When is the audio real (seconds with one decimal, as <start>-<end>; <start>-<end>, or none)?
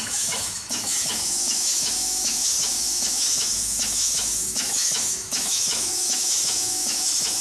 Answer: none